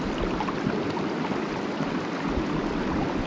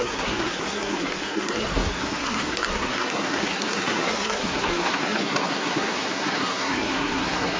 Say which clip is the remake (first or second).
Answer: second